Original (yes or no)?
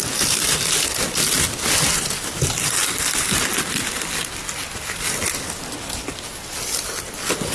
yes